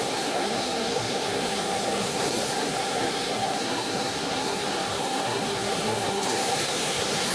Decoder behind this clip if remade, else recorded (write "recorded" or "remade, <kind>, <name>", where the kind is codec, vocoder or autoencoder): remade, codec, SNAC